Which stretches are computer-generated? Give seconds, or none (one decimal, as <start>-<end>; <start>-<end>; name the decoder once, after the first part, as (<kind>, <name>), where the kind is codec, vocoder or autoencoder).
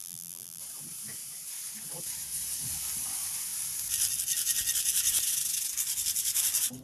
0.0-0.6 (vocoder, BigVGAN v2)